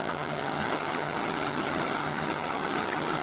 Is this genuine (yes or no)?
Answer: no